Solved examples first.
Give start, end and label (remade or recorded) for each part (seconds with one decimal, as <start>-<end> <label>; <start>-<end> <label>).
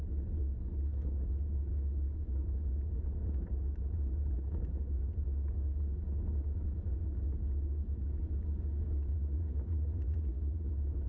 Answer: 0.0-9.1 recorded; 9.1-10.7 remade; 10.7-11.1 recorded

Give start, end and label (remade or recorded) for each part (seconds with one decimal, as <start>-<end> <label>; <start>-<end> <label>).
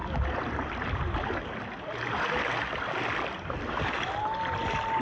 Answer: 0.0-5.0 recorded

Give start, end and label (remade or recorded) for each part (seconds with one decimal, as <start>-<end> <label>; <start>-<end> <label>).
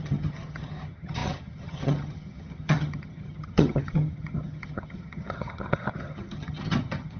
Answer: 0.0-7.2 remade